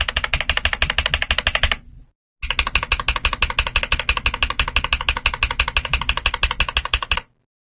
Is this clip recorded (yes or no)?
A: yes